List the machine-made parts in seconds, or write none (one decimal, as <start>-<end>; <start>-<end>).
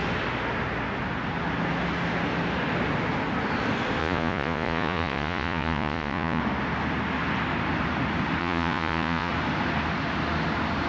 4.0-6.4; 8.4-9.3